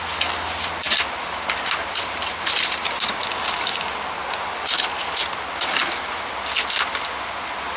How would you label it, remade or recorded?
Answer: recorded